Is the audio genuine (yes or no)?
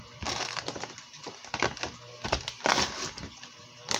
yes